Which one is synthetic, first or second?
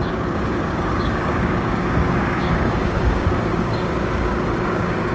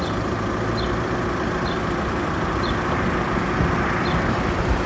first